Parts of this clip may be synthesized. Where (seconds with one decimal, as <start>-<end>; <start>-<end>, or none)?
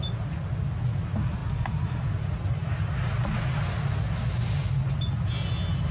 none